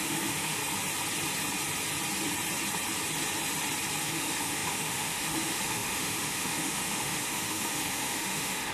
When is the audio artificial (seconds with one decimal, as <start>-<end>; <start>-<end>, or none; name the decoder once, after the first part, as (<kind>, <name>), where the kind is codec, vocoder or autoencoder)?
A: 0.0-0.6 (autoencoder, DAC-VAE); 4.0-8.7